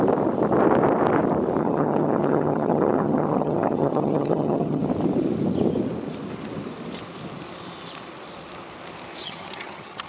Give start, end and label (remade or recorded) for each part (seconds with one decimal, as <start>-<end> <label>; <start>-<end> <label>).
0.0-1.6 recorded; 1.6-4.8 remade; 4.8-9.2 recorded; 9.2-10.1 remade